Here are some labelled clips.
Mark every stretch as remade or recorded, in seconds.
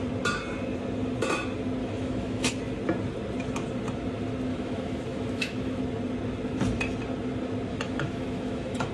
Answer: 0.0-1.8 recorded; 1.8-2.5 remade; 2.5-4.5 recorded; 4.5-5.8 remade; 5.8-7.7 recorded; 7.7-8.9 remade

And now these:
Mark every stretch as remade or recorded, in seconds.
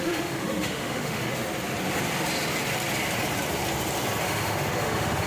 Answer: 0.0-1.3 remade; 1.3-4.2 recorded; 4.2-5.3 remade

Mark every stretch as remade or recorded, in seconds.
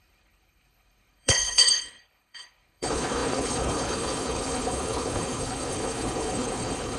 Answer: 0.0-7.0 remade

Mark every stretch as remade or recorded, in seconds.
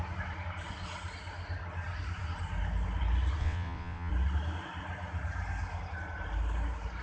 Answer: 0.0-3.4 recorded; 3.4-4.1 remade; 4.1-7.0 recorded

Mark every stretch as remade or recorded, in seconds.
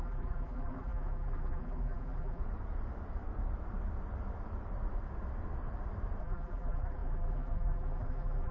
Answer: 0.0-2.4 remade; 2.4-6.2 recorded; 6.2-8.5 remade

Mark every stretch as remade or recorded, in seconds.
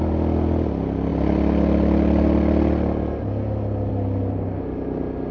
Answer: 0.0-5.3 recorded